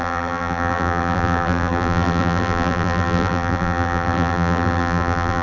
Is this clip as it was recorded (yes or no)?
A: no